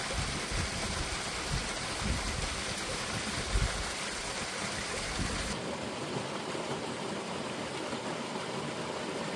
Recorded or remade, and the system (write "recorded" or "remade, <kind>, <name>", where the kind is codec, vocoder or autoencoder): recorded